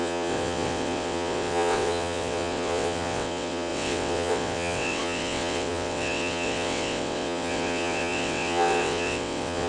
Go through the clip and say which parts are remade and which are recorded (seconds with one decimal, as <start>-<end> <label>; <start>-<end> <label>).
0.0-9.7 remade